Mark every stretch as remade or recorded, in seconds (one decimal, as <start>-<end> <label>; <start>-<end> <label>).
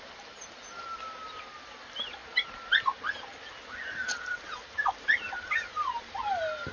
0.0-6.7 recorded